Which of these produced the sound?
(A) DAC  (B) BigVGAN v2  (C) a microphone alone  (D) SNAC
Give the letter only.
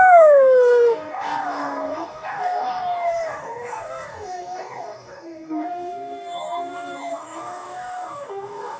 A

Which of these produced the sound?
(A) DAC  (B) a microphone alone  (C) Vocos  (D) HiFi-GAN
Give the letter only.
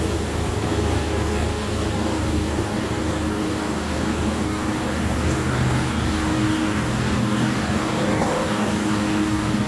A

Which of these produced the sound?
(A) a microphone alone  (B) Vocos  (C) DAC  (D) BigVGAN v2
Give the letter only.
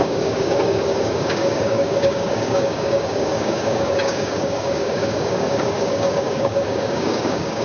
C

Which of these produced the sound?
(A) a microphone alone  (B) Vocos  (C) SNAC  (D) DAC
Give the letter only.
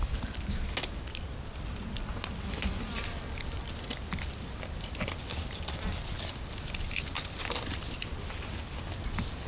A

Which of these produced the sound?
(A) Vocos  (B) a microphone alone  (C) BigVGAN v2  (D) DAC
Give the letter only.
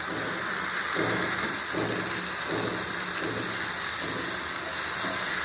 B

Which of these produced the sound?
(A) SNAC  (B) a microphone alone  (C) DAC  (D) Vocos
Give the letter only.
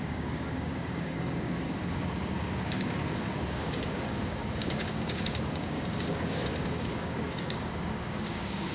C